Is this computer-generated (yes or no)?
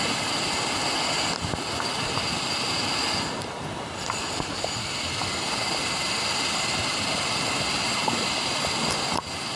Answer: no